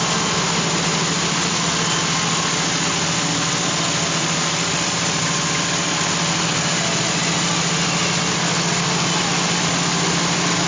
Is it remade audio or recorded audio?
recorded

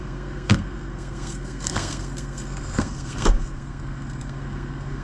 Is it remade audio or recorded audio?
remade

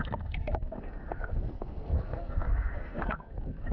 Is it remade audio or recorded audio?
remade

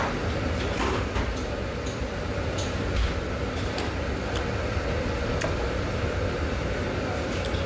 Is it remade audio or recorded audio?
recorded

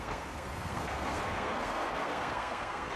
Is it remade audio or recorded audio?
remade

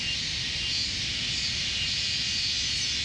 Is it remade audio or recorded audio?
recorded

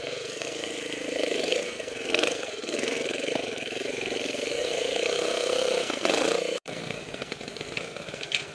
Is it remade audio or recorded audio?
remade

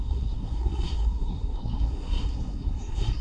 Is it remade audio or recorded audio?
remade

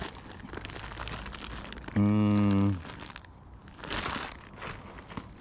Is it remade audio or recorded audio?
recorded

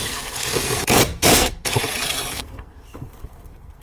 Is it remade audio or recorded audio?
remade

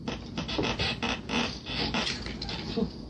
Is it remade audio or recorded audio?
recorded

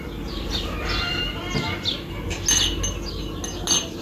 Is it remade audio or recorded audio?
recorded